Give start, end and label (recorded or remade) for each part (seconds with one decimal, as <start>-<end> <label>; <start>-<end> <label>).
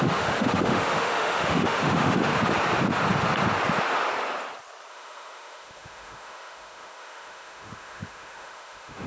0.0-2.3 remade; 2.3-4.9 recorded; 4.9-9.1 remade